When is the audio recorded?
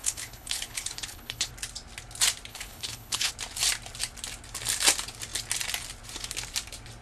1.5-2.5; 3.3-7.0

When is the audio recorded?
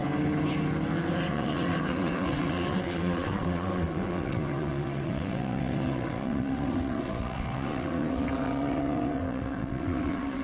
0.0-1.3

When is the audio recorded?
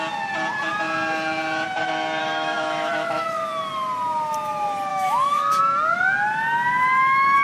0.0-2.2; 3.5-4.9; 5.6-7.4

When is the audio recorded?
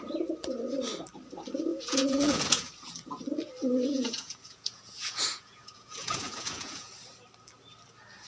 0.0-1.7; 2.7-3.9; 6.9-8.3